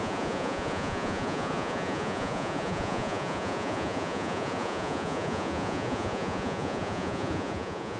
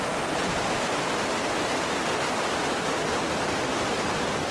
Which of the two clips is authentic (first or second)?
second